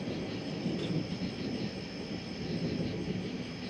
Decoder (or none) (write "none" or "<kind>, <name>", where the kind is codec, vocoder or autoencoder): none